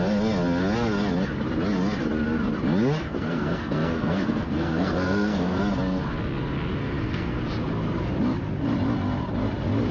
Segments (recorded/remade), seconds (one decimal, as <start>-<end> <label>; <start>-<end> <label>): 0.0-3.0 recorded; 3.0-5.6 remade; 5.6-6.8 recorded; 6.8-7.4 remade; 7.4-9.9 recorded